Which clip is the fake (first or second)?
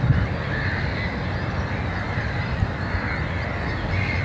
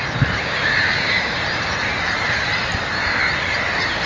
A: second